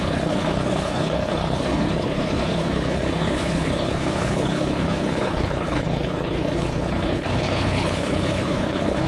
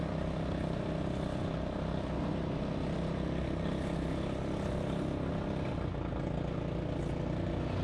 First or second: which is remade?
first